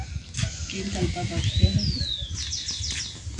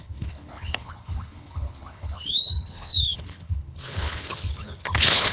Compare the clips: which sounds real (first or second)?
first